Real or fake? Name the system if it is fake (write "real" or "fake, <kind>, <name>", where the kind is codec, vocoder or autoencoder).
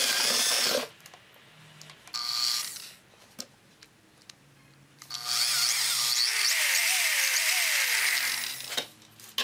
real